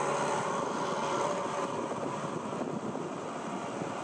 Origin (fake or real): real